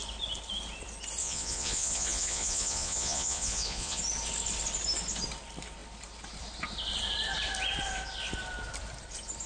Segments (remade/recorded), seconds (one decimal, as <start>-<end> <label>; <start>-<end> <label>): 0.0-1.2 recorded; 1.2-4.0 remade; 4.0-9.5 recorded